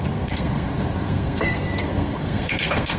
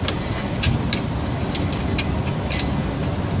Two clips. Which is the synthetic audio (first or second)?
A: first